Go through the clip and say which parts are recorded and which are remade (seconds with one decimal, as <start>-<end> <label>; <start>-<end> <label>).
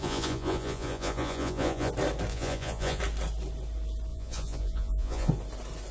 0.0-1.9 remade; 1.9-2.3 recorded; 2.3-3.0 remade; 3.0-4.1 recorded; 4.1-5.3 remade; 5.3-5.9 recorded